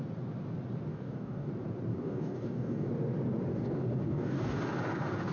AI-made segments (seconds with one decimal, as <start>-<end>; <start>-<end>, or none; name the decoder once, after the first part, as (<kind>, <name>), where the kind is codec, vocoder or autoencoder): 0.9-1.5 (codec, DAC); 1.9-2.9; 3.5-4.6